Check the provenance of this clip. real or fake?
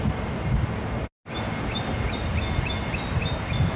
real